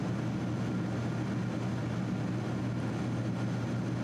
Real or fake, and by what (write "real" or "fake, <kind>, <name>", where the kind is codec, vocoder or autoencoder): real